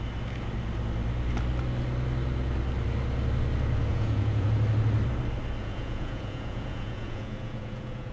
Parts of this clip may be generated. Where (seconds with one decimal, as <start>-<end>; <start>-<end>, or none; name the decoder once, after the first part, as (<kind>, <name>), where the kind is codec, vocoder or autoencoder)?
3.9-4.5 (vocoder, Vocos); 5.6-8.1